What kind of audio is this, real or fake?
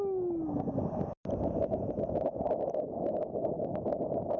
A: real